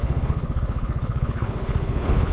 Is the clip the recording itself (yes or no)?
no